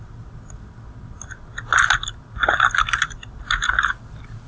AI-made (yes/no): no